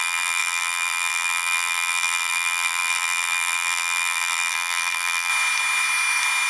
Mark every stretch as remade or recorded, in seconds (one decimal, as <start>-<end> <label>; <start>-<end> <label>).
0.0-5.3 remade; 5.3-6.5 recorded